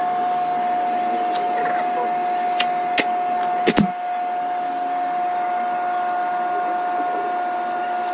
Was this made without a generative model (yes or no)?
yes